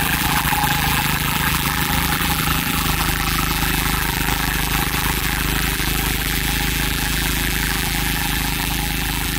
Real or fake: fake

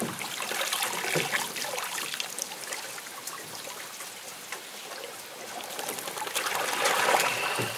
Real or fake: real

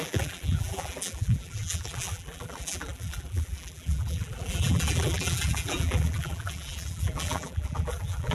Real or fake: fake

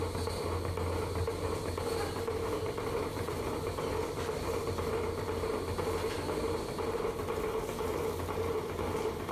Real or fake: real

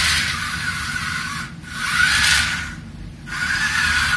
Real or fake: real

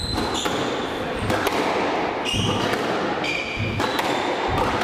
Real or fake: real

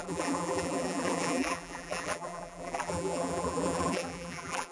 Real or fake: fake